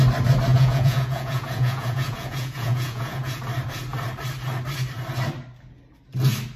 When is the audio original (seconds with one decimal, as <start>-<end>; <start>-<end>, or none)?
0.0-0.5; 3.4-6.6